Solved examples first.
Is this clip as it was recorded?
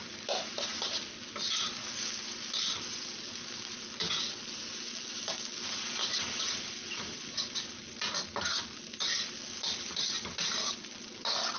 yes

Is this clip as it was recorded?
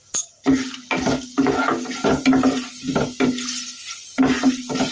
yes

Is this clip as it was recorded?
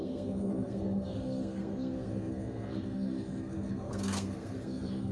no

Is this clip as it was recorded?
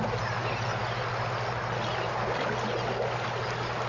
yes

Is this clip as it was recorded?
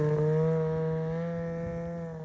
yes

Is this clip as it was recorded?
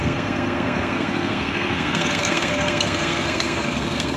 no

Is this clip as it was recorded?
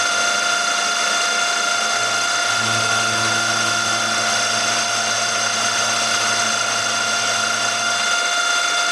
yes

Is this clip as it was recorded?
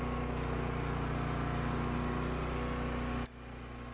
yes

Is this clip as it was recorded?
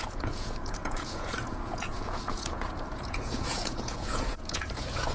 no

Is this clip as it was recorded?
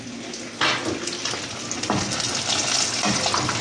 yes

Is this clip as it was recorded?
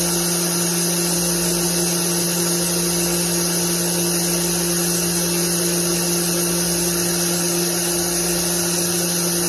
yes